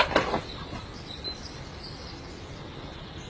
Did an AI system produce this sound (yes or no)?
no